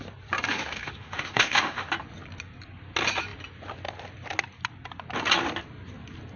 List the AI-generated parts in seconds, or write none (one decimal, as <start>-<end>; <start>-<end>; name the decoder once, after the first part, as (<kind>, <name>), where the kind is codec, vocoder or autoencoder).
0.5-1.9 (autoencoder, DAC-VAE)